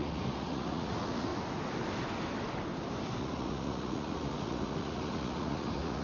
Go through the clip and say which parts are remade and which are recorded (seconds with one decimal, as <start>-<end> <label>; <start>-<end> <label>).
0.0-1.3 remade; 1.3-3.2 recorded; 3.2-6.0 remade